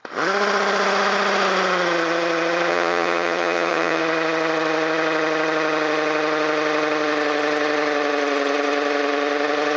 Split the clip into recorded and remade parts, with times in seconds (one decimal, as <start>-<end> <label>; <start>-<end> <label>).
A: 0.0-2.7 recorded; 2.7-4.0 remade; 4.0-9.8 recorded